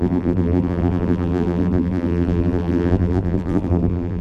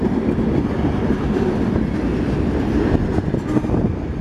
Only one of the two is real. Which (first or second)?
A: second